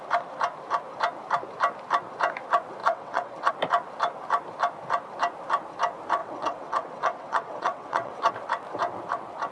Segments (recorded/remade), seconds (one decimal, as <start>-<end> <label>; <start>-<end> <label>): 0.0-2.8 recorded; 2.8-3.5 remade; 3.5-6.2 recorded; 6.2-8.3 remade; 8.3-9.5 recorded